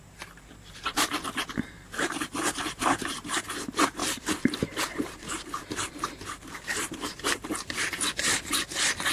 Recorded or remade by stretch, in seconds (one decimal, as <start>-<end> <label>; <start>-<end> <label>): 0.0-8.3 remade; 8.3-9.1 recorded